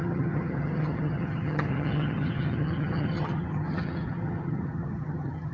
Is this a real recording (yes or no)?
no